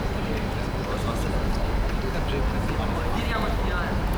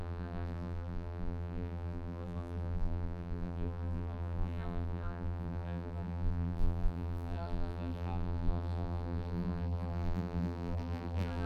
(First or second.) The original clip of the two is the first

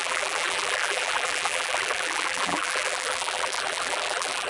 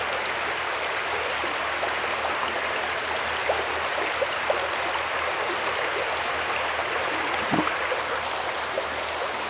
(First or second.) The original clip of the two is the second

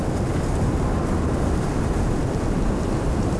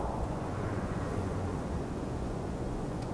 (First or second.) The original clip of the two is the first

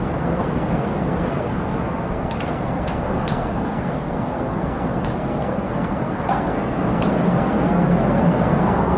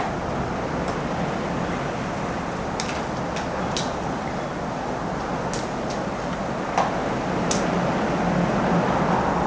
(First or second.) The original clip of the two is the second